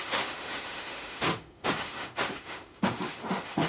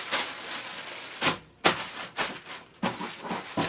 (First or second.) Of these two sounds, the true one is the second